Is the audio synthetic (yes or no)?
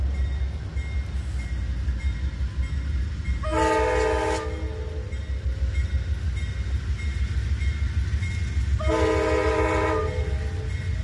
no